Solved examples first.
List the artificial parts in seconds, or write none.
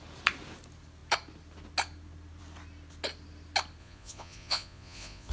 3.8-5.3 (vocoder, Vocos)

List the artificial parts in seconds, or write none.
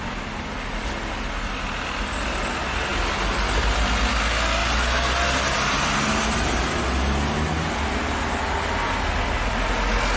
none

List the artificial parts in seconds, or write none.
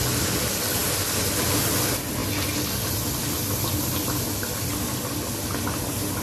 none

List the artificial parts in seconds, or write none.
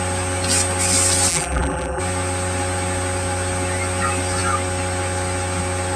1.3-2.0 (vocoder, BigVGAN v2)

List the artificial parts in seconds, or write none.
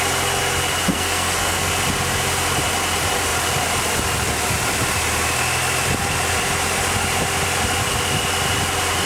0.9-1.7 (codec, SNAC)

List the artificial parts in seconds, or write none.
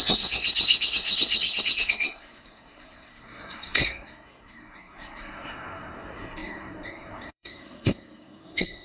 0.0-8.8 (codec, SNAC)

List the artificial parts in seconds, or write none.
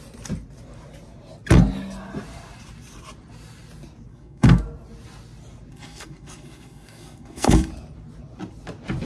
4.1-4.6 (codec, SNAC); 5.7-7.7